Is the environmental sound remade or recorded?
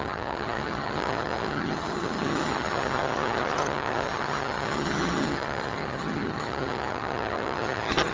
remade